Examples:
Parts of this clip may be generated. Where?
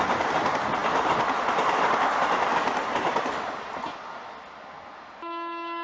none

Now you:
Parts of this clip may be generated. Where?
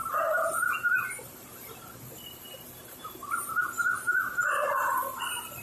0.0-3.4 (vocoder, BigVGAN v2)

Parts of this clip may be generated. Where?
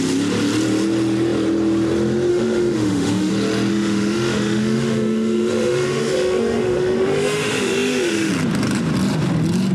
2.3-3.3 (autoencoder, DAC-VAE); 3.7-8.3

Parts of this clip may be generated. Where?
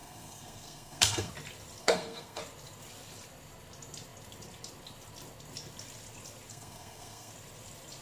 0.0-1.3 (codec, SNAC); 1.8-2.4; 6.5-7.3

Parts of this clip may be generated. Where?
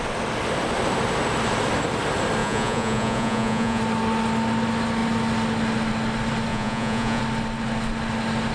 2.4-3.8 (vocoder, Vocos); 6.5-7.2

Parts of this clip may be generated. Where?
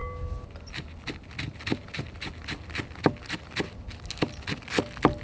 none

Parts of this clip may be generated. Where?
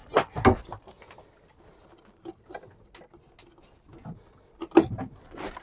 none